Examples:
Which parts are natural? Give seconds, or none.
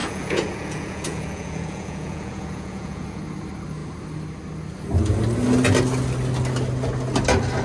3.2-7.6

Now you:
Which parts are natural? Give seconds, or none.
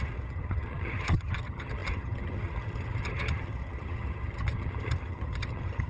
none